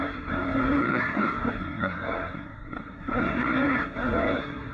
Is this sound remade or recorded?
remade